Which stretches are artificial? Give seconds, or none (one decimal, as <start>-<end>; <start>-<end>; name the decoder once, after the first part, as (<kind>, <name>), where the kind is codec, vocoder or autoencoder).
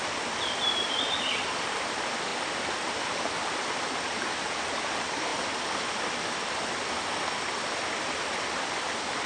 none